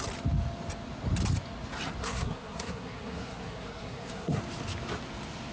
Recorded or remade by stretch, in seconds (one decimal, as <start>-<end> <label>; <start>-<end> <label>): 0.0-2.0 recorded; 2.0-4.4 remade; 4.4-5.5 recorded